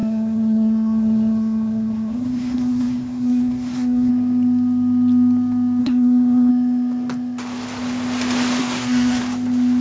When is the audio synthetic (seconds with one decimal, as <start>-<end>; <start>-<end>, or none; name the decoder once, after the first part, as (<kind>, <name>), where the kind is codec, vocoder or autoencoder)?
0.0-4.1 (codec, SNAC); 5.8-6.5; 8.6-9.2